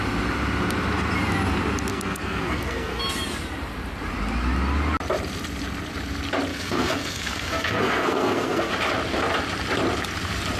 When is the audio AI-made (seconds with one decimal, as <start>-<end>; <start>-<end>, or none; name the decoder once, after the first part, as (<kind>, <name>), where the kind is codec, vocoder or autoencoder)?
1.9-3.0 (codec, SNAC); 6.5-8.7